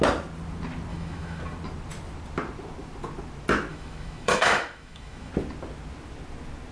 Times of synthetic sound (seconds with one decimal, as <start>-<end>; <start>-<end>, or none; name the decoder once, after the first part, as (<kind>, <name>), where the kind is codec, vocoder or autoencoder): 0.9-1.4 (autoencoder, DAC-VAE); 3.7-5.3